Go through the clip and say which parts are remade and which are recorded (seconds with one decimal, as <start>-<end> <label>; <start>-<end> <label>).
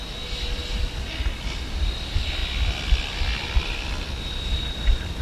0.0-5.2 recorded